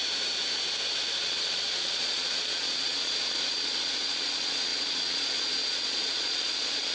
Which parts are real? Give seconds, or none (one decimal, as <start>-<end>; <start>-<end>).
0.0-1.2